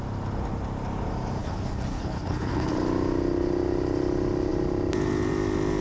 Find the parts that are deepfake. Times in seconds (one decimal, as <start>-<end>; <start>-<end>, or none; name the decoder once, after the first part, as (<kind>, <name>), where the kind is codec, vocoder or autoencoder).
1.4-2.7 (codec, HILCodec)